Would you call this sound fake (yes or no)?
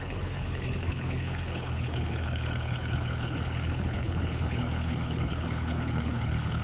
yes